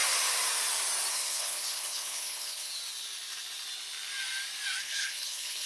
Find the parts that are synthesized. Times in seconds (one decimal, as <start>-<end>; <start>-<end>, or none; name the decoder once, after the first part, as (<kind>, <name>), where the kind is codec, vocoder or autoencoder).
1.1-2.7 (codec, HILCodec); 4.8-5.7